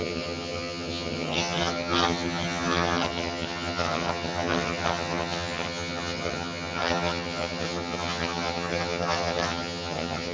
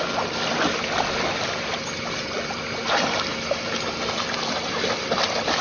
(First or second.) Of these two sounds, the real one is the second